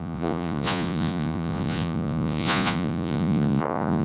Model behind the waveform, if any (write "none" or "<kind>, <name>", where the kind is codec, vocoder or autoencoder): vocoder, Vocos